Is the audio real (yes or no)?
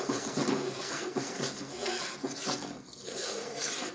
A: no